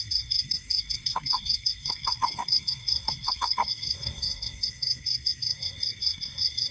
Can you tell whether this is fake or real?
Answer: fake